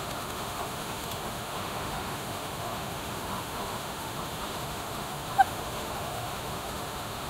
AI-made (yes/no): yes